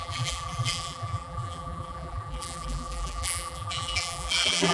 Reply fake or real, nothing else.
fake